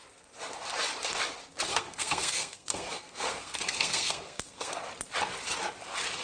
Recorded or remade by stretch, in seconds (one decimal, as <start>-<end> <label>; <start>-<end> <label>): 0.0-1.7 recorded; 1.7-4.8 remade; 4.8-6.2 recorded